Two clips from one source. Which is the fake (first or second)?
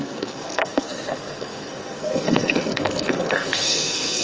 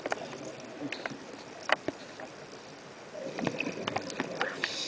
first